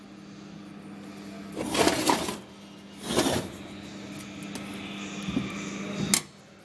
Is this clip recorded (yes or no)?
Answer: yes